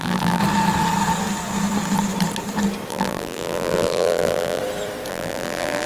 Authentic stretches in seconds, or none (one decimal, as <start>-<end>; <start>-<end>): 0.4-2.9; 4.6-5.1